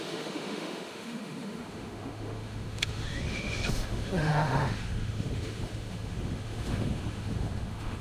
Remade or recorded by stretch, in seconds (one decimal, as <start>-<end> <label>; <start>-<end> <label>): 0.0-8.0 remade